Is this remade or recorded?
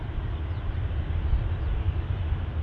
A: recorded